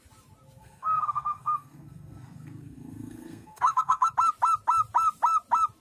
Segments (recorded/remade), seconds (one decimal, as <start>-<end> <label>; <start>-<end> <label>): 0.0-0.6 recorded; 0.6-4.1 remade; 4.1-5.8 recorded